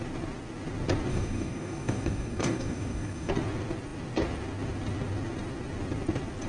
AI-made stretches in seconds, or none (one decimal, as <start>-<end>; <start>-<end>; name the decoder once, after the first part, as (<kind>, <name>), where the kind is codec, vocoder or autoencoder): 1.1-3.3 (codec, DAC)